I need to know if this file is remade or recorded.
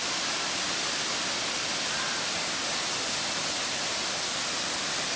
recorded